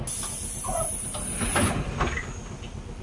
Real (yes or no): yes